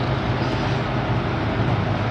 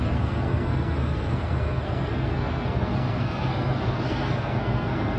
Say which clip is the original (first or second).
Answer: first